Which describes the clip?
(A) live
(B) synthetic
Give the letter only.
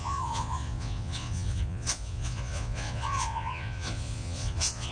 B